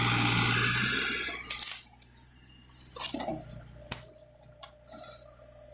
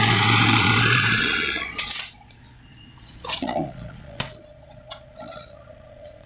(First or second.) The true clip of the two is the first